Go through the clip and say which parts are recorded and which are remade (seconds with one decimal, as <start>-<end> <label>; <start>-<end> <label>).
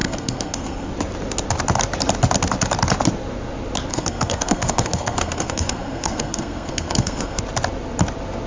0.0-0.9 remade; 0.9-3.9 recorded; 3.9-7.4 remade; 7.4-8.5 recorded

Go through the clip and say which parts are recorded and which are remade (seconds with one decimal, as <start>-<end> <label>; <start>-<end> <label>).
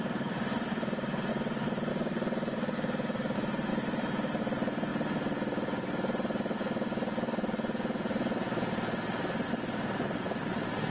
0.0-1.3 remade; 1.3-1.9 recorded; 1.9-4.9 remade; 4.9-9.5 recorded; 9.5-10.9 remade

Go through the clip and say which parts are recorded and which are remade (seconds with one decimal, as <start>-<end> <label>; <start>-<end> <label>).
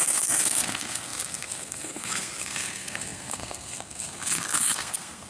0.0-5.3 remade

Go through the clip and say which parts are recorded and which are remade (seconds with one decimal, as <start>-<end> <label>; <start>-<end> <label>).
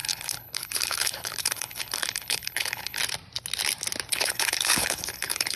0.0-3.0 remade; 3.0-4.1 recorded; 4.1-5.6 remade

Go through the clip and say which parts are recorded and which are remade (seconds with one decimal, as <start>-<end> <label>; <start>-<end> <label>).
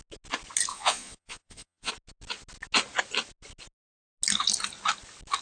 0.0-0.7 recorded; 0.7-1.9 remade; 1.9-5.4 recorded